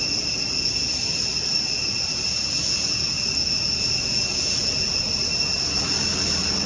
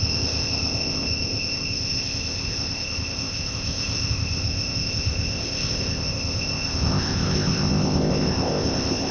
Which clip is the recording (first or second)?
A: first